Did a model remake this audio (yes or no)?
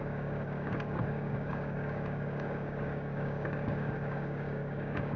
yes